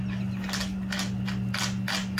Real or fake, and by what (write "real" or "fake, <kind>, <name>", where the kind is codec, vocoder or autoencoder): real